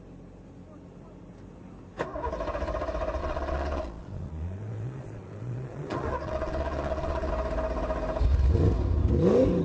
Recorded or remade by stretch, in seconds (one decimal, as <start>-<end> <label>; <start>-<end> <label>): 0.0-3.2 recorded; 3.2-7.3 remade; 7.3-9.6 recorded